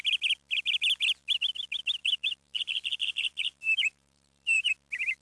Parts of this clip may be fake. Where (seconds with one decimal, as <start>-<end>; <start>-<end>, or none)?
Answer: 2.0-4.7